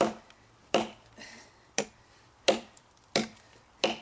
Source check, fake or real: fake